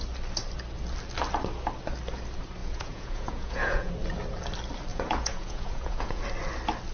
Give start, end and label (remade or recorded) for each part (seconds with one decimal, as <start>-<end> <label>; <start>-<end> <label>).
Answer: 0.0-2.6 recorded; 2.6-3.9 remade; 3.9-4.9 recorded; 4.9-6.2 remade; 6.2-6.9 recorded